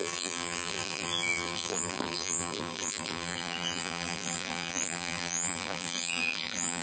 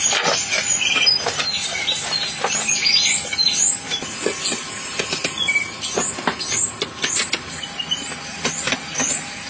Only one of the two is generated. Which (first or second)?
first